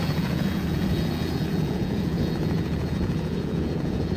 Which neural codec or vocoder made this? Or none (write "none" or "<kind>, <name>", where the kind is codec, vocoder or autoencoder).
vocoder, Vocos